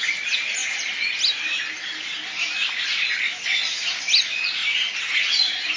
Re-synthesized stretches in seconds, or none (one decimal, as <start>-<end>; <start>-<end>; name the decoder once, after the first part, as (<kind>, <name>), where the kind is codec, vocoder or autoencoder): none